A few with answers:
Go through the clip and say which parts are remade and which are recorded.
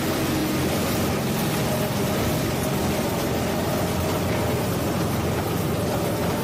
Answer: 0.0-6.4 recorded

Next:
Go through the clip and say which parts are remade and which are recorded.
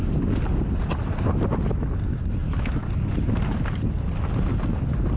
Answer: 0.0-5.2 recorded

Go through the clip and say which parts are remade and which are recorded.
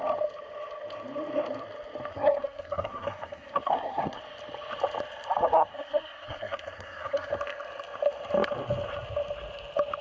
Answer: 0.0-2.1 recorded; 2.1-4.2 remade; 4.2-5.7 recorded; 5.7-7.3 remade; 7.3-10.0 recorded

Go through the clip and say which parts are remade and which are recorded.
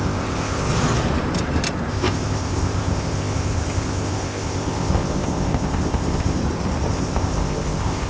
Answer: 0.0-0.7 remade; 0.7-1.9 recorded; 1.9-6.4 remade; 6.4-6.9 recorded; 6.9-8.1 remade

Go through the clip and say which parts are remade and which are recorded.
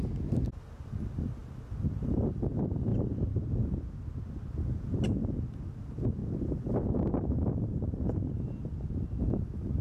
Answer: 0.0-2.9 recorded; 2.9-3.5 remade; 3.5-6.2 recorded; 6.2-8.4 remade; 8.4-9.8 recorded